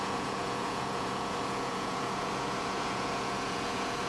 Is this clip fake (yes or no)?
yes